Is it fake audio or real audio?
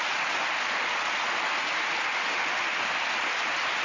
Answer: real